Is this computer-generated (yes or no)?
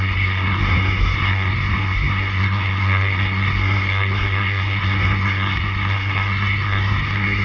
yes